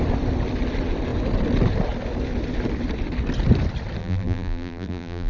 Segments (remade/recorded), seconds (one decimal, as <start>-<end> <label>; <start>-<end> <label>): 0.0-4.0 recorded; 4.0-5.3 remade